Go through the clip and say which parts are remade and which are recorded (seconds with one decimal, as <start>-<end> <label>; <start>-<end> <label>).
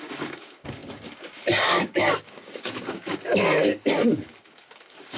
0.0-5.2 remade